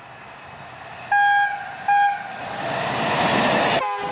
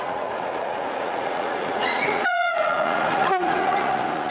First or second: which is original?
first